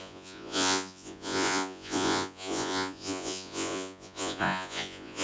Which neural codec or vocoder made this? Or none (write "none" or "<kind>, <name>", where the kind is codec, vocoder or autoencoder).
vocoder, Vocos